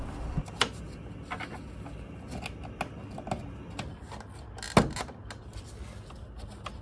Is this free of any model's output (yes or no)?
yes